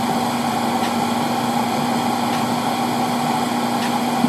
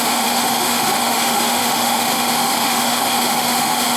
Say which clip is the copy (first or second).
second